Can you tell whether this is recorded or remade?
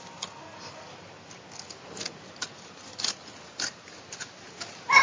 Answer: recorded